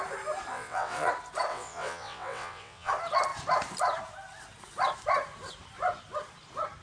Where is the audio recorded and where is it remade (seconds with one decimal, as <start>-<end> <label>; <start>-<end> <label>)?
0.0-0.5 recorded; 0.5-1.1 remade; 1.1-1.5 recorded; 1.5-2.9 remade; 2.9-6.8 recorded